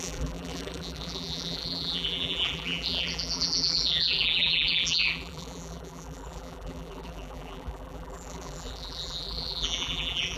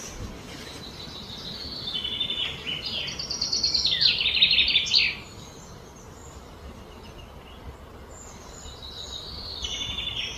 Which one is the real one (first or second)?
second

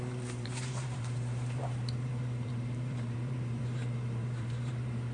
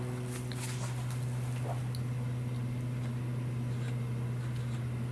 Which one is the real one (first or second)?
second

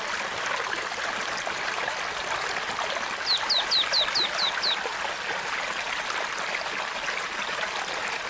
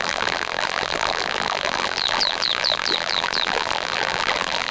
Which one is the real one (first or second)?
first